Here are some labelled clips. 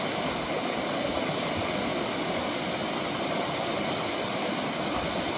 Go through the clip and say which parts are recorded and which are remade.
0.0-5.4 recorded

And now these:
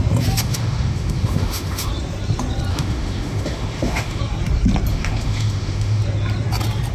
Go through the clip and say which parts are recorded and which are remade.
0.0-0.4 recorded; 0.4-1.9 remade; 1.9-2.7 recorded; 2.7-4.2 remade; 4.2-4.9 recorded; 4.9-6.0 remade; 6.0-6.9 recorded

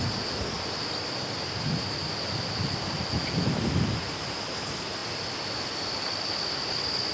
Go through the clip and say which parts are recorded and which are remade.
0.0-7.1 recorded

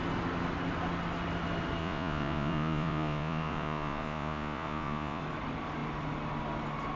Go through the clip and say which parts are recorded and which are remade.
0.0-1.8 recorded; 1.8-5.2 remade; 5.2-7.0 recorded